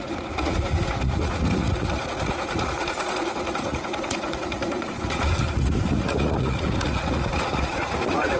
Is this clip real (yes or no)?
no